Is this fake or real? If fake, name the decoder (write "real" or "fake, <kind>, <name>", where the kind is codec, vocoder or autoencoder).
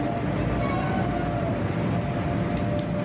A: real